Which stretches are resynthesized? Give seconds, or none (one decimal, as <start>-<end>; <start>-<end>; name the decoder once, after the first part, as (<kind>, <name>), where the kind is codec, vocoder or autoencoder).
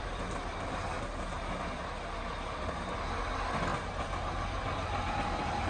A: none